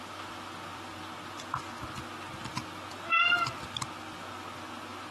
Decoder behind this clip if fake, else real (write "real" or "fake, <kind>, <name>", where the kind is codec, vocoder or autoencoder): real